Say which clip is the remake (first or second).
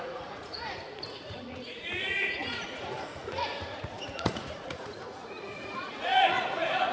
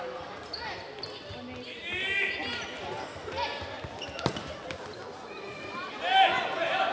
first